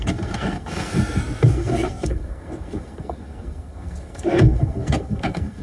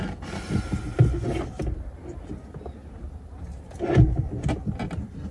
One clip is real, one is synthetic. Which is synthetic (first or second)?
first